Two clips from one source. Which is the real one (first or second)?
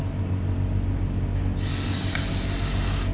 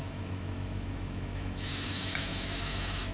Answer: first